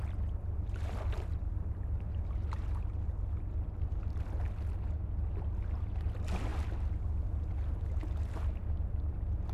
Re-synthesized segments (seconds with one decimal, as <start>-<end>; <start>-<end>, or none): none